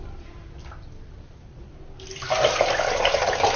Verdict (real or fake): real